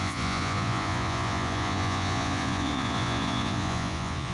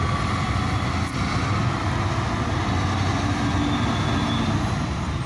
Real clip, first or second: second